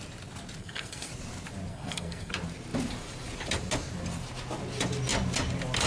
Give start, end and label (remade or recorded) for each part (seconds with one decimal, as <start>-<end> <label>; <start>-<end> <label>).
0.0-0.6 recorded; 0.6-1.1 remade; 1.1-1.7 recorded; 1.7-2.3 remade; 2.3-5.9 recorded

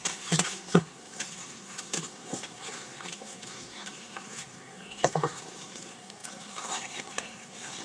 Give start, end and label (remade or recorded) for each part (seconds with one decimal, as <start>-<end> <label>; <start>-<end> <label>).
0.0-7.8 remade

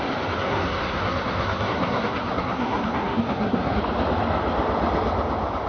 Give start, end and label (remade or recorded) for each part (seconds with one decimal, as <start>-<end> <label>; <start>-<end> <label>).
0.0-0.4 recorded; 0.4-3.8 remade; 3.8-5.7 recorded

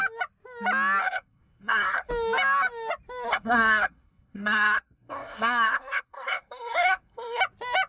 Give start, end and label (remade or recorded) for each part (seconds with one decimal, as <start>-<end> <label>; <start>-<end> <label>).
0.0-1.0 recorded; 1.0-2.1 remade; 2.1-3.3 recorded; 3.3-7.4 remade; 7.4-7.9 recorded

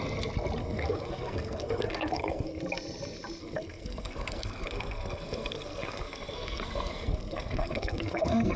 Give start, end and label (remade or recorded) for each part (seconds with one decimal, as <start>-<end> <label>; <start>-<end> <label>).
0.0-0.6 recorded; 0.6-2.6 remade; 2.6-3.4 recorded; 3.4-8.6 remade